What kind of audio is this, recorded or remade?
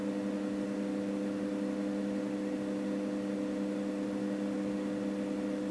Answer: recorded